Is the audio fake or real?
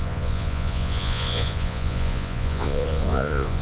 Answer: fake